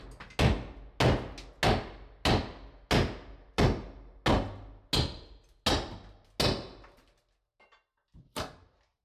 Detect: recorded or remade recorded